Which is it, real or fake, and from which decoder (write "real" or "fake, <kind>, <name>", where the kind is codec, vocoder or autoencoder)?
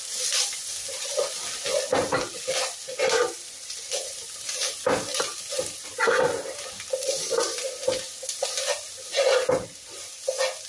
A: real